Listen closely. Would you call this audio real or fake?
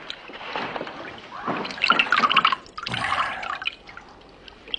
real